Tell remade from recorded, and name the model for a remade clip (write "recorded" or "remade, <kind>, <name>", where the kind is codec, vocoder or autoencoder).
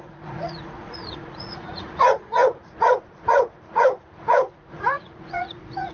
remade, vocoder, Vocos